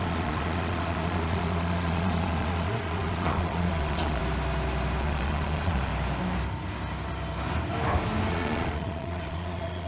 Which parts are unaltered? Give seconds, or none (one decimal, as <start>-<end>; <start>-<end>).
4.2-5.0; 5.9-8.3